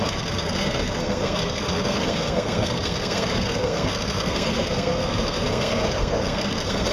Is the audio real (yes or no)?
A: no